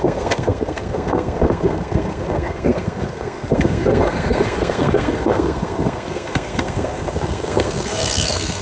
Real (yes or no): no